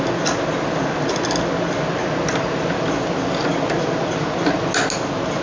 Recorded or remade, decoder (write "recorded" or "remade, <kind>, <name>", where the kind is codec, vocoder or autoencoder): recorded